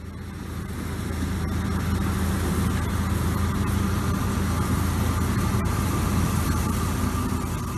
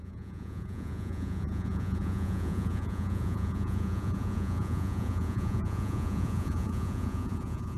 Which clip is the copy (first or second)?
second